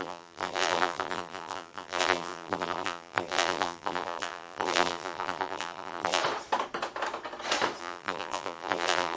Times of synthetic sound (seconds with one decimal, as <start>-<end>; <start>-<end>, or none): 0.0-6.2; 7.8-9.2